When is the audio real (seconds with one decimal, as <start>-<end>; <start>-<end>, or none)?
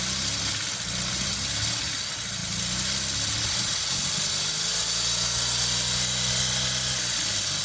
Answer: 0.0-7.6